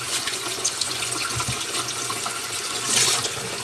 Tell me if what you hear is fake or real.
fake